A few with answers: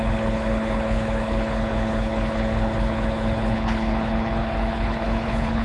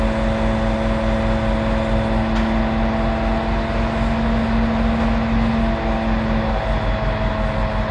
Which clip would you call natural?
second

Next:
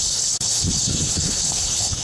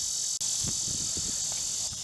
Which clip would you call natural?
second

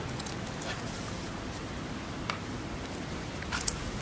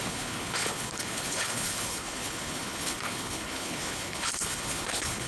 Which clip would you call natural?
first